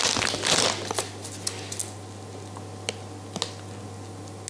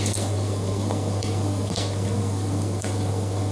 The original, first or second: first